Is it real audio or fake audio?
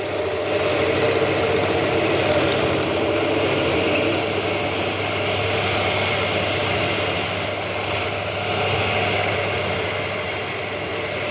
real